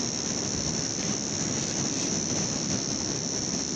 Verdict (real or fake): real